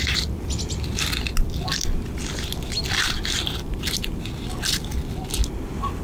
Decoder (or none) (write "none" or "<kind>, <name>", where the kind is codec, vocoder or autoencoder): none